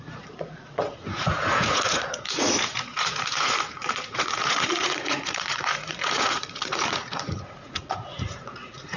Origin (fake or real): fake